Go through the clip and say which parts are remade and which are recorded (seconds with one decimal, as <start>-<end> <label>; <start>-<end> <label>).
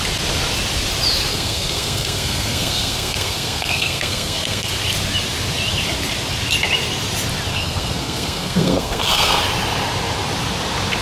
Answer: 0.0-1.3 recorded; 1.3-4.7 remade; 4.7-7.5 recorded; 7.5-9.4 remade; 9.4-11.0 recorded